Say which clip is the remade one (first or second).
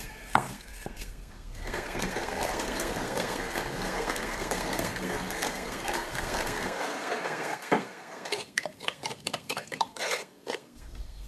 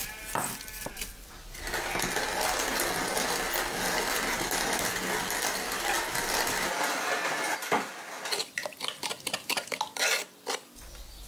first